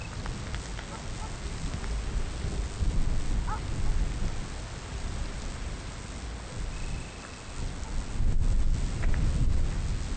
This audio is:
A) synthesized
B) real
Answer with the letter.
B